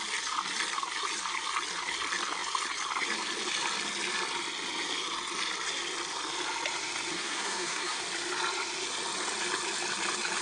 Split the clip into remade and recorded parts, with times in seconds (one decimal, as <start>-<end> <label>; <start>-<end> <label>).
0.0-7.1 recorded; 7.1-8.0 remade; 8.0-10.4 recorded

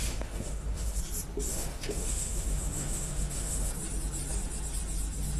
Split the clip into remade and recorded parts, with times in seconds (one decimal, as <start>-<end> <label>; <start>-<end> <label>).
0.0-1.0 remade; 1.0-1.5 recorded; 1.5-3.7 remade; 3.7-5.4 recorded

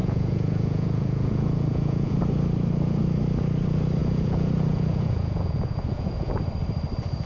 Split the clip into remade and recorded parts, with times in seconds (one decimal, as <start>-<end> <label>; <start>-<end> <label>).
0.0-2.2 remade; 2.2-4.0 recorded; 4.0-6.4 remade; 6.4-7.3 recorded

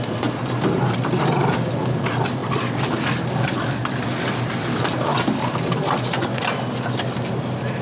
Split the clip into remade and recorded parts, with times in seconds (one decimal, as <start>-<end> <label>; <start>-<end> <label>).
0.0-7.8 recorded

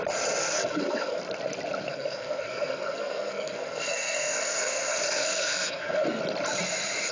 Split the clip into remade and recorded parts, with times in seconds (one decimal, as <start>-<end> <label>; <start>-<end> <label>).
0.0-0.4 recorded; 0.4-1.2 remade; 1.2-1.9 recorded; 1.9-6.2 remade; 6.2-7.1 recorded

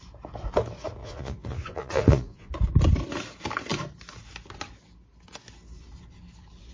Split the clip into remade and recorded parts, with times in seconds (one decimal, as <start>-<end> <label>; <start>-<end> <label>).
0.0-1.0 recorded; 1.0-2.5 remade; 2.5-6.7 recorded

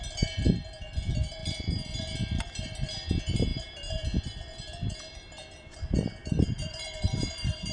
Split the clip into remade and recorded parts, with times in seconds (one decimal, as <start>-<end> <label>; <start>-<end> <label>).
0.0-7.7 remade